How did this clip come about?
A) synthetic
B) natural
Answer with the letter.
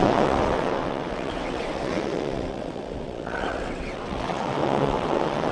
A